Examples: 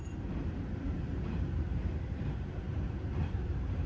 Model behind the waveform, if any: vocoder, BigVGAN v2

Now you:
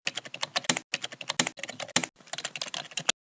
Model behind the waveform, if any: none